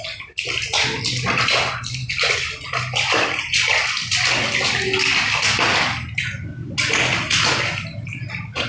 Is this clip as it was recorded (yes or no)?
yes